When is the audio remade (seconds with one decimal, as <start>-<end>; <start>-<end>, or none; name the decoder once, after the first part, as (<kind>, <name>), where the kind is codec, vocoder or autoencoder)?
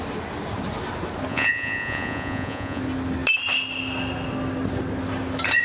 1.3-2.8 (vocoder, Vocos)